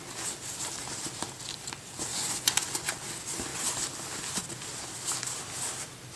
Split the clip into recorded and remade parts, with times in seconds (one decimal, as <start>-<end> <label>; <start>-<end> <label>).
0.0-2.1 recorded; 2.1-2.9 remade; 2.9-6.2 recorded